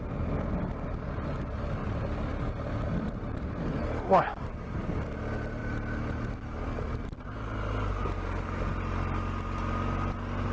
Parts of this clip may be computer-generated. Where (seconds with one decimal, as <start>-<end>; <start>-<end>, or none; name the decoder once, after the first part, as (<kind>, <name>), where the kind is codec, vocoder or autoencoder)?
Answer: none